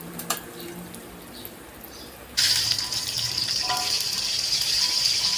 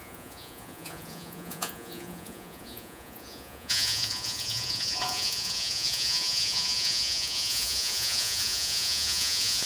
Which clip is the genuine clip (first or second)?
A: first